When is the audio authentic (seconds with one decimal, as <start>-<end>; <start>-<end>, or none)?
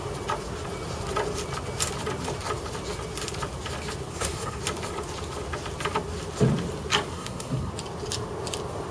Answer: 0.0-4.1; 4.6-7.1; 7.7-8.9